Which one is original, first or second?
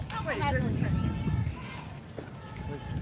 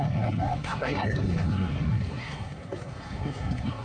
first